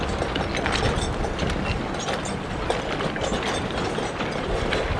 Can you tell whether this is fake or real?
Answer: real